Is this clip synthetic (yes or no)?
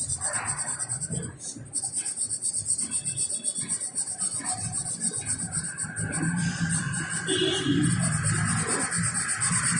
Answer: no